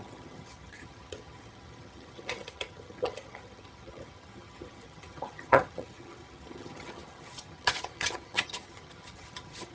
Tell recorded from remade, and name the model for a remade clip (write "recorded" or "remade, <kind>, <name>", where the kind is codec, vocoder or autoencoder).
remade, vocoder, HiFi-GAN